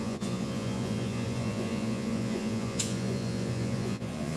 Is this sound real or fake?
fake